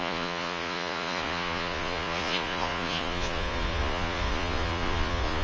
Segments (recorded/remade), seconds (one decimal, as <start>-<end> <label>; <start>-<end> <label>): 0.0-5.4 remade